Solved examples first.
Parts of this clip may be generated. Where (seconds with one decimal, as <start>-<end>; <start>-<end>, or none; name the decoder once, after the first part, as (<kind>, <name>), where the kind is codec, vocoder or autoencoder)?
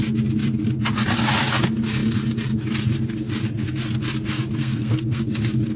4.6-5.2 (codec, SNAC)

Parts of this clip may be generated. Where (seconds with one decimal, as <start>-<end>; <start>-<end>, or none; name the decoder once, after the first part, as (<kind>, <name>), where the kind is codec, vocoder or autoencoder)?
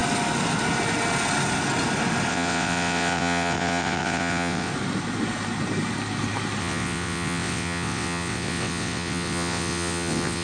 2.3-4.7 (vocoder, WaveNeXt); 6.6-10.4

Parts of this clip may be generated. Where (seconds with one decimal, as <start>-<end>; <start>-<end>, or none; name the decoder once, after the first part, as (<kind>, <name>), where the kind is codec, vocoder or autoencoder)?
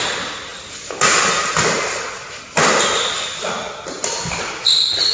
none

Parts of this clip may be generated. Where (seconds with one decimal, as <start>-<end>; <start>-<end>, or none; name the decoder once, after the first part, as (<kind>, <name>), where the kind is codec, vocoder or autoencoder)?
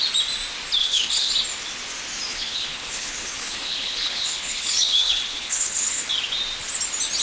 0.8-1.3 (codec, HILCodec); 2.3-6.1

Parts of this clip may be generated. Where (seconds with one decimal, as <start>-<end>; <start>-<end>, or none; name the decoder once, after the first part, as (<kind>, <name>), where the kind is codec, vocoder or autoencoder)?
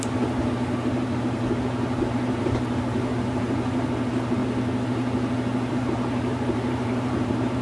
0.0-4.4 (vocoder, BigVGAN v2); 5.7-7.6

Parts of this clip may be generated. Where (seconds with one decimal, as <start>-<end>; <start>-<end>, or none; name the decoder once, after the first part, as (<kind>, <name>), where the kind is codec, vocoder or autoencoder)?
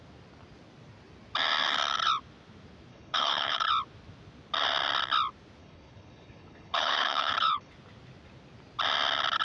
2.9-3.7 (codec, HILCodec); 5.6-7.7